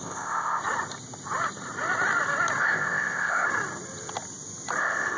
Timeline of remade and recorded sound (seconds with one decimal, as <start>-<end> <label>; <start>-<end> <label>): 0.0-0.6 remade; 0.6-2.6 recorded; 2.6-3.5 remade; 3.5-4.8 recorded; 4.8-5.2 remade